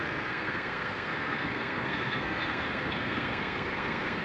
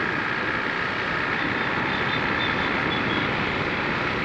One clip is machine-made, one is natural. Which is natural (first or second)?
second